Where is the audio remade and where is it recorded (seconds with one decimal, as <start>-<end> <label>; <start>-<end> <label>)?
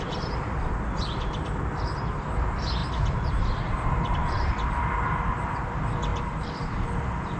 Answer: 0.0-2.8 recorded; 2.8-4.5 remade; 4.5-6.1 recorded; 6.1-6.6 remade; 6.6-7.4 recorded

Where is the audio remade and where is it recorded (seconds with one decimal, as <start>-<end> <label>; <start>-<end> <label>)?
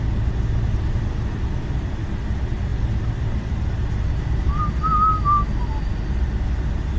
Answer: 0.0-7.0 recorded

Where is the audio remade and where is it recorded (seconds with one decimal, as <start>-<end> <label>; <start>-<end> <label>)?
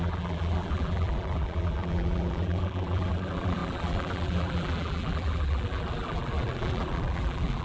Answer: 0.0-7.6 remade